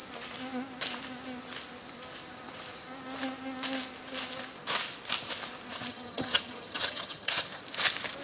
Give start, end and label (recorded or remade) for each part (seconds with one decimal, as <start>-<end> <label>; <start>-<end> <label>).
0.0-5.9 recorded; 5.9-7.6 remade; 7.6-8.2 recorded